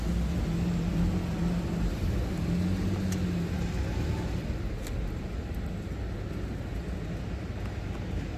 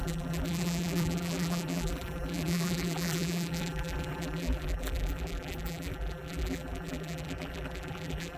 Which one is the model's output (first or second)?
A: second